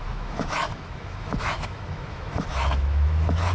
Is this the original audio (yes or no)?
no